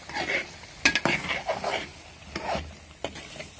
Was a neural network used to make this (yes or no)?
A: no